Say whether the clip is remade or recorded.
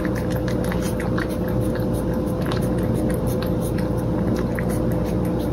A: recorded